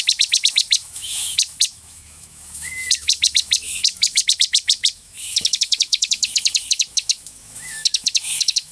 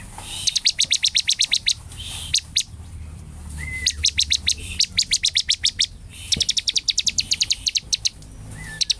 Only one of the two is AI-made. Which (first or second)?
first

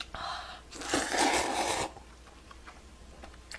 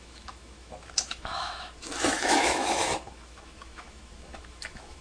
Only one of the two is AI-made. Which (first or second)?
second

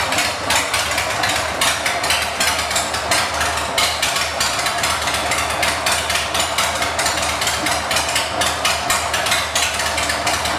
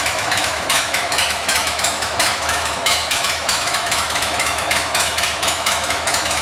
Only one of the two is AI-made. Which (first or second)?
second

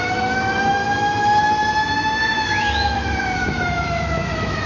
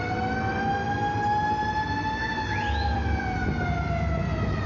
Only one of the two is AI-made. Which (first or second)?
first